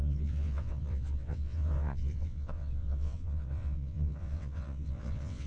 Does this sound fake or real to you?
fake